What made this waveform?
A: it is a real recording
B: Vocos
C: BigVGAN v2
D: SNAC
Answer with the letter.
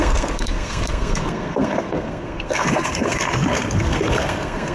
D